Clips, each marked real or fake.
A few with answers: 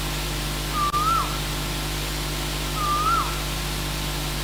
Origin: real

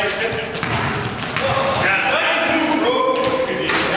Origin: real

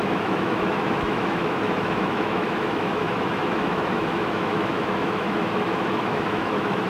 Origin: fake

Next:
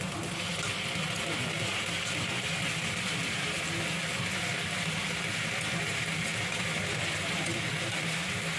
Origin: real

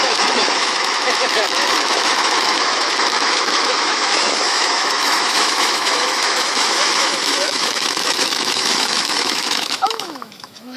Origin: fake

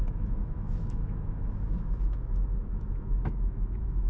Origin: fake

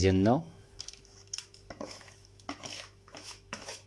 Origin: fake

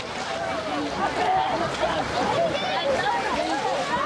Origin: real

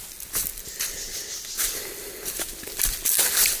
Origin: real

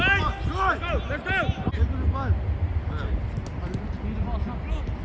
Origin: real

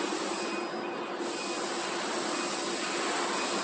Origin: real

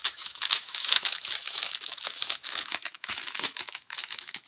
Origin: fake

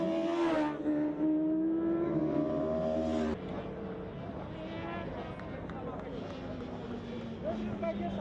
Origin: real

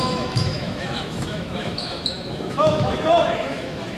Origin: fake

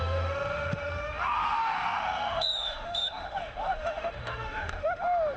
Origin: fake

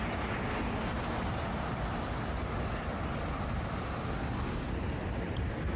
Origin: real